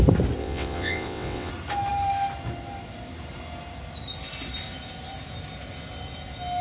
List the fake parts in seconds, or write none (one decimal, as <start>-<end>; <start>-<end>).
0.4-1.5